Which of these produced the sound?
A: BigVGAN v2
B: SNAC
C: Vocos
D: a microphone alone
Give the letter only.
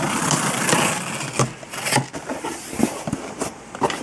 D